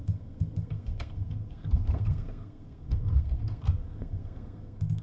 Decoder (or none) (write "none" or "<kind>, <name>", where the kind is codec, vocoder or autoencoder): codec, SNAC